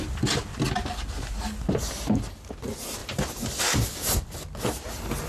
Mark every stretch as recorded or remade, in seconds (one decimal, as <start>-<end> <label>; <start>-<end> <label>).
0.0-5.3 recorded